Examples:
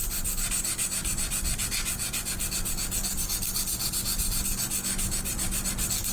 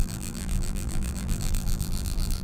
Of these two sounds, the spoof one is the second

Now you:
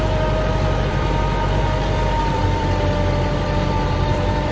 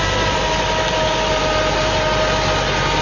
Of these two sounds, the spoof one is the first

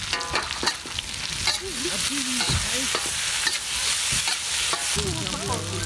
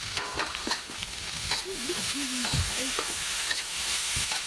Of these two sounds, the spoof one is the second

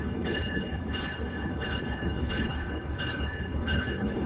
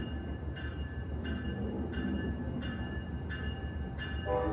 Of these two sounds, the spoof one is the first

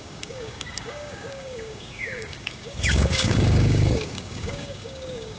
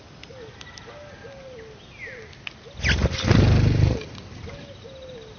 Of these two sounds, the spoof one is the first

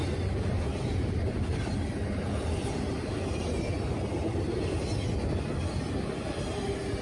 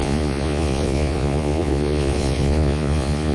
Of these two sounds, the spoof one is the second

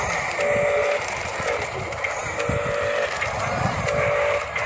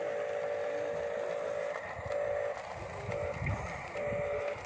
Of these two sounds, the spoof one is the second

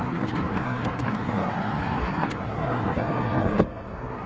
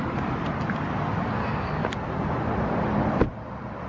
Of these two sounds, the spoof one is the first